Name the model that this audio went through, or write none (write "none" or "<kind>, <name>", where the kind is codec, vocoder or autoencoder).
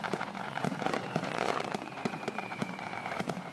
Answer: vocoder, Vocos